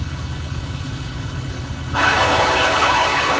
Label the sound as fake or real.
fake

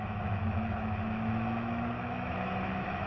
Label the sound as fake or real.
fake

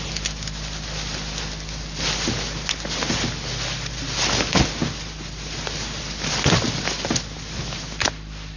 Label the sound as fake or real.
real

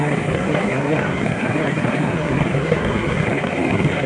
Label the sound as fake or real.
fake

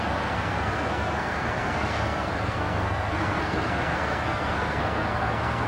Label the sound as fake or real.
fake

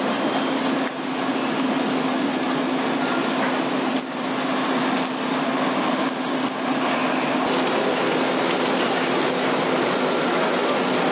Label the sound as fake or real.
real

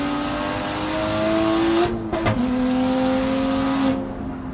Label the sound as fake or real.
real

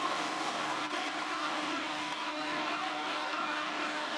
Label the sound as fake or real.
fake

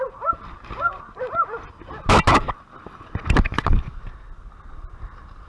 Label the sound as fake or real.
real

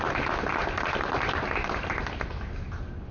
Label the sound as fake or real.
real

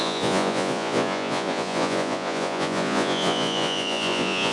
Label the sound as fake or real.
fake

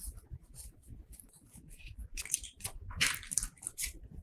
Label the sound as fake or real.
real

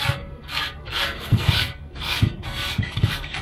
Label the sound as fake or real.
fake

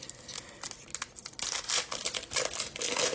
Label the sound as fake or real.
real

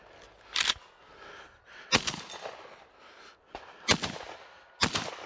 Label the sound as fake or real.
real